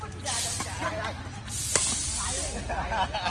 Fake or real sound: real